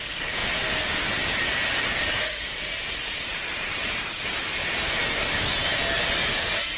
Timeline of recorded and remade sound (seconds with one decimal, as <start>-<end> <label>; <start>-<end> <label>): 0.0-4.6 remade; 4.6-6.3 recorded; 6.3-6.8 remade